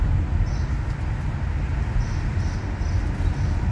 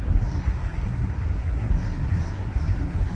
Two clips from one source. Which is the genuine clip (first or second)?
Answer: first